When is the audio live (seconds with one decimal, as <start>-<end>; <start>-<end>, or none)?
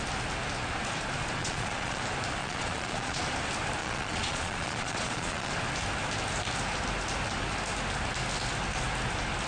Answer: 0.0-1.4; 2.0-2.4; 3.2-3.8; 5.5-9.5